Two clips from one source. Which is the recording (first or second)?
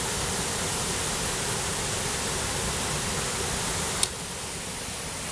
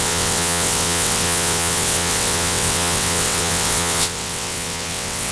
first